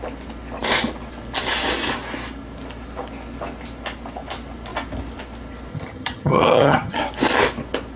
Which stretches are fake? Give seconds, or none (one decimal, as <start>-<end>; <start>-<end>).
5.7-7.0